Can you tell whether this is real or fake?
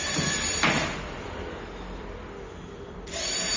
fake